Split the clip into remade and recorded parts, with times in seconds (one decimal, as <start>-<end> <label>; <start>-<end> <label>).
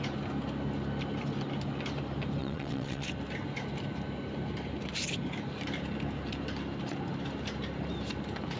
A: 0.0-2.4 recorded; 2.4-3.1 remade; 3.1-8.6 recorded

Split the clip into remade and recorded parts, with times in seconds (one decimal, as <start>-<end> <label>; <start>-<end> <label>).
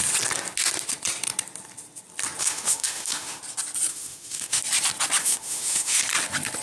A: 0.0-2.4 recorded; 2.4-3.4 remade; 3.4-3.9 recorded; 3.9-4.6 remade; 4.6-5.2 recorded; 5.2-6.0 remade; 6.0-6.6 recorded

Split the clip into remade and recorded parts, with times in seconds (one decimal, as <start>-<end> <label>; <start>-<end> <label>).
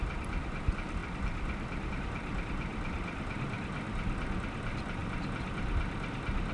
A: 0.0-6.5 recorded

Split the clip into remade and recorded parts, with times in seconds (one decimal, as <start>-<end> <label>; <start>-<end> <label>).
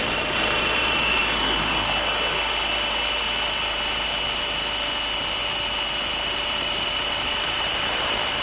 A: 0.0-1.2 remade; 1.2-6.2 recorded; 6.2-8.4 remade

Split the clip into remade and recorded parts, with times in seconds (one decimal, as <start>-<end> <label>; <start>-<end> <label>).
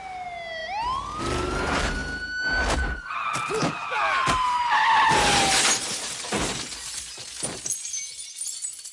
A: 0.0-8.9 recorded